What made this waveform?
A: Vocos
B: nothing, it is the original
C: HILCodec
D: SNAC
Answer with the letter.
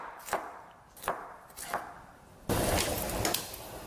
B